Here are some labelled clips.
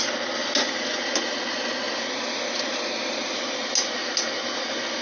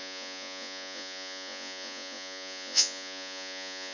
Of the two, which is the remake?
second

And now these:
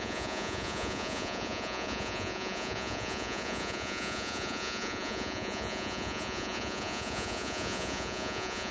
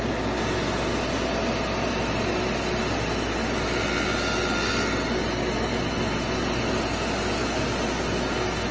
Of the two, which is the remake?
first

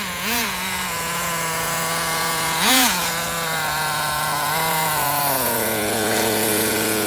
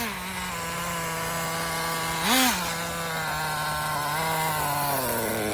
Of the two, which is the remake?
first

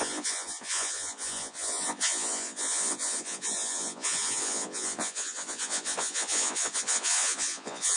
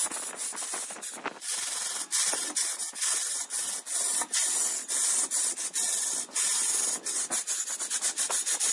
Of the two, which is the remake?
first